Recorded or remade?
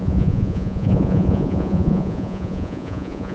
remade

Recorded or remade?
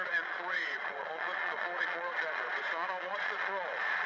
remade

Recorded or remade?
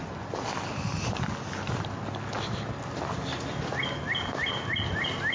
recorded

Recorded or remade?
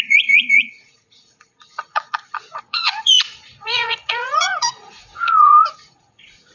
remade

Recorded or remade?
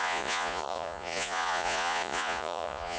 remade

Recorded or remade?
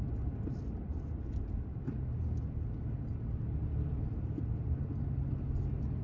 recorded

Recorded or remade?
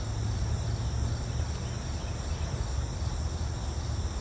recorded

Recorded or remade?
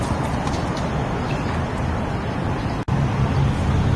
recorded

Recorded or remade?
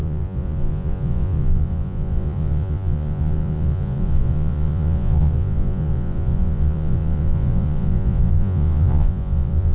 remade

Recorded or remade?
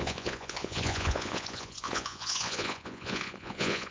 remade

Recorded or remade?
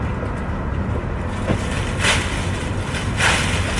recorded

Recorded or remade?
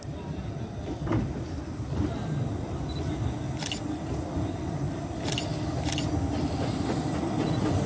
recorded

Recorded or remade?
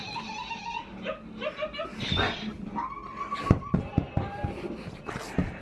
recorded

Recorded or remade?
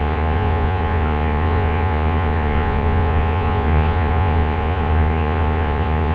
remade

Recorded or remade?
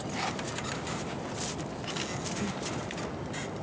recorded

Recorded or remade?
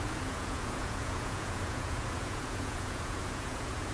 remade